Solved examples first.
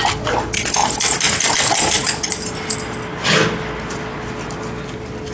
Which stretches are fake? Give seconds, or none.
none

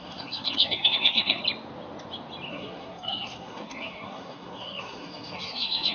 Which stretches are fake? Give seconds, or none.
0.0-1.4 (codec, SNAC); 2.5-5.9

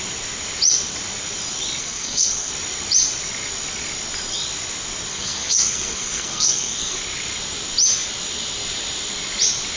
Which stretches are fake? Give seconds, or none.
1.8-2.5 (codec, SNAC); 5.1-7.0